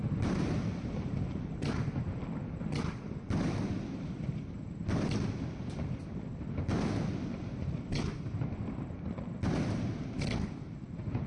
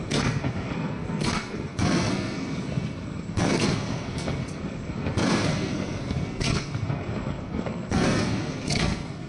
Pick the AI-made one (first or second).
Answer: second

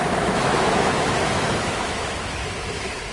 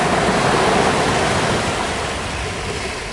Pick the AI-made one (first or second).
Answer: first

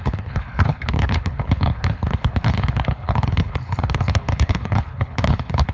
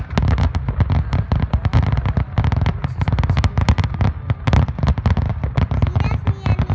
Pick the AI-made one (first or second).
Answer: first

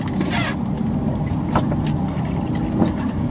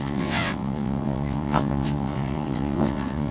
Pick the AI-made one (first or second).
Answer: second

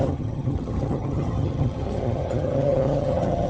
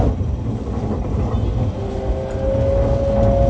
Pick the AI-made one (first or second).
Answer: first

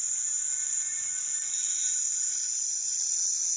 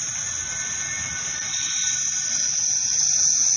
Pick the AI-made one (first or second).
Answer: first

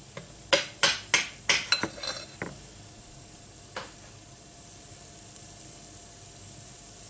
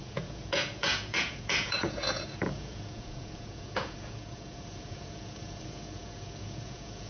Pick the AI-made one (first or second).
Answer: second